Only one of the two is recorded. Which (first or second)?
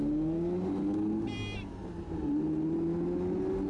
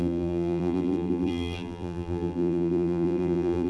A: first